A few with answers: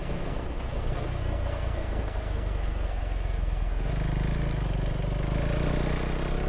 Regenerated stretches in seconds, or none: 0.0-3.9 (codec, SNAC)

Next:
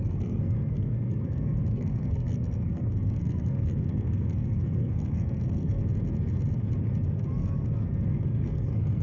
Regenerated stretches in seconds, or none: 0.0-5.8 (codec, SNAC); 8.1-9.0

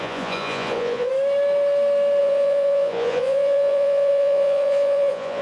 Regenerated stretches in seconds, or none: 0.0-1.1 (vocoder, Vocos); 2.2-5.4

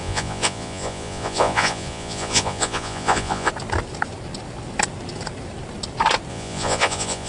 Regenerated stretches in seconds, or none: 0.0-3.5 (vocoder, Vocos); 6.3-7.3